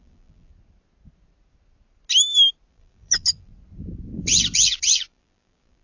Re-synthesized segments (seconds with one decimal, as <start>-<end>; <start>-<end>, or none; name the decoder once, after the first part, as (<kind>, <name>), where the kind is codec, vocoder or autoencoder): 0.0-0.5 (vocoder, BigVGAN v2); 2.7-3.5; 4.2-5.8